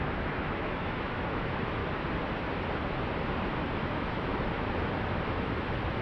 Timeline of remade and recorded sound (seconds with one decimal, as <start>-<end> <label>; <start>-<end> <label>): 0.0-1.8 remade; 1.8-3.7 recorded; 3.7-6.0 remade